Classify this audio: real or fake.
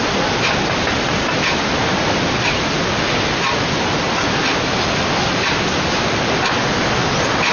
real